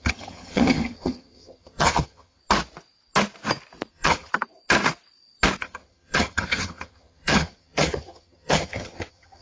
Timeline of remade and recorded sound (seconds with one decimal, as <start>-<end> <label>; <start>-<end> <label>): 0.0-2.4 remade; 2.4-3.9 recorded; 3.9-4.3 remade; 4.3-5.6 recorded; 5.6-9.4 remade

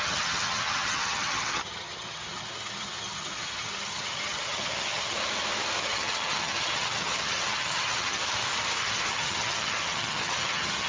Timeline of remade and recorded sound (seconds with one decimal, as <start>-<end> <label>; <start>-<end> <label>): 0.0-5.2 remade; 5.2-5.8 recorded; 5.8-8.2 remade; 8.2-8.8 recorded; 8.8-10.9 remade